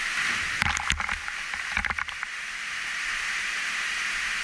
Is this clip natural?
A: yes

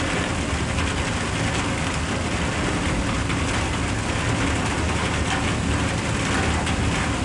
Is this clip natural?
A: yes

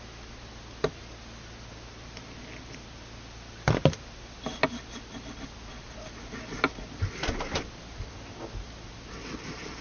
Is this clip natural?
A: yes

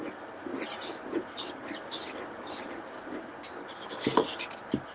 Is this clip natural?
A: yes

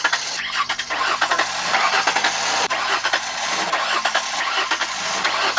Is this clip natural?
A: yes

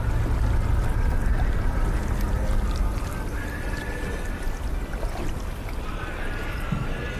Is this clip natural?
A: yes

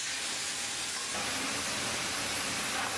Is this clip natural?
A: yes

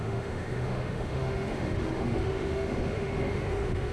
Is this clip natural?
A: no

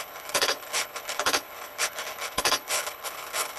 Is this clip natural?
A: no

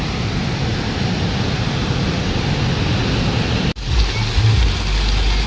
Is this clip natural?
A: yes